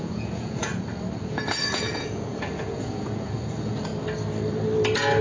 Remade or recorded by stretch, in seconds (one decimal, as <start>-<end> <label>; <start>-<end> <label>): 0.0-0.7 remade; 0.7-1.2 recorded; 1.2-3.9 remade; 3.9-5.2 recorded